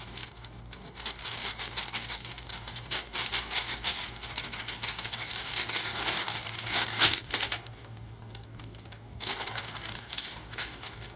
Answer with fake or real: fake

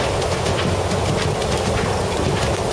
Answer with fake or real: real